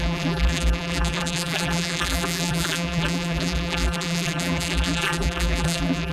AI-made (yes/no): yes